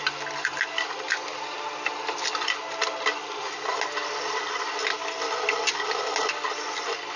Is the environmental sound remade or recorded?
recorded